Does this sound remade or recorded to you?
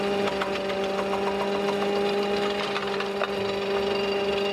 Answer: recorded